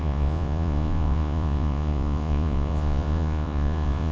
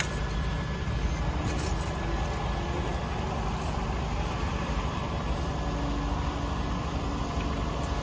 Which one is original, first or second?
second